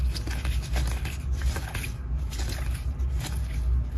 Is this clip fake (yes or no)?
no